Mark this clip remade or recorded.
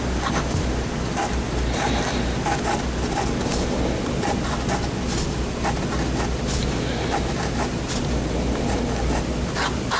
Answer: recorded